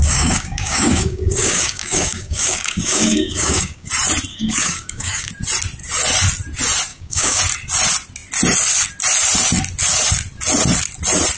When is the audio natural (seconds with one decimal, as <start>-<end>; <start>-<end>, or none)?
3.9-4.3; 5.3-6.9; 7.4-11.4